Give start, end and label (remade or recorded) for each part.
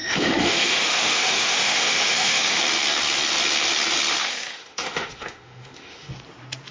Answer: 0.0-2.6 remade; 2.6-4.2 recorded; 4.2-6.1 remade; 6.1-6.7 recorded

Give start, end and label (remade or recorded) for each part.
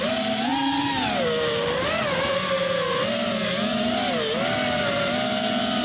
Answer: 0.0-5.8 recorded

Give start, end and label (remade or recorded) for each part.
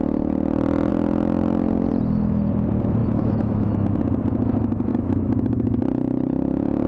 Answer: 0.0-3.0 recorded; 3.0-4.0 remade; 4.0-4.9 recorded; 4.9-5.8 remade; 5.8-6.9 recorded